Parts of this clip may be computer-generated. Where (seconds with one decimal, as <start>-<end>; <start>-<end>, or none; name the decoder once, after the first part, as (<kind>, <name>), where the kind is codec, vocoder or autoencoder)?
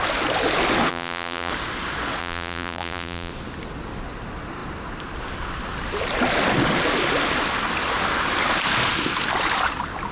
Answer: 0.9-1.5 (vocoder, BigVGAN v2); 2.2-3.3